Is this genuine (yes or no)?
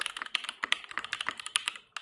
yes